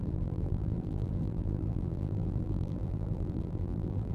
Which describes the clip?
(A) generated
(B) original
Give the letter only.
A